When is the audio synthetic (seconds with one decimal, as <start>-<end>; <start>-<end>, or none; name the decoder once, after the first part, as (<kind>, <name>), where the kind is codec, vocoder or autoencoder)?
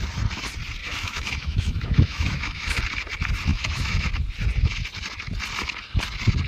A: 0.8-2.8 (autoencoder, DAC-VAE); 3.5-4.1